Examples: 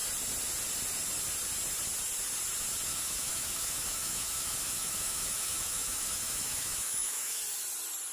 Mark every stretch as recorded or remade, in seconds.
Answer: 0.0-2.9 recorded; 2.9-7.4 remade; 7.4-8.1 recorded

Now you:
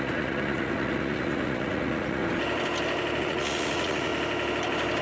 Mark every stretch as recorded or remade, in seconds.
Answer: 0.0-2.2 remade; 2.2-3.2 recorded; 3.2-4.1 remade; 4.1-5.0 recorded

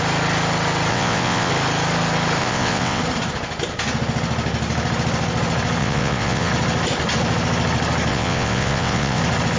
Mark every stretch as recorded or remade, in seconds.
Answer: 0.0-0.9 recorded; 0.9-1.5 remade; 1.5-2.4 recorded; 2.4-3.0 remade; 3.0-5.8 recorded; 5.8-6.5 remade; 6.5-8.1 recorded; 8.1-9.2 remade; 9.2-9.6 recorded